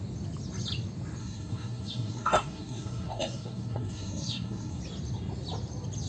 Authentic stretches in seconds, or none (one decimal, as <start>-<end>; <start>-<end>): 0.0-1.2; 4.8-6.1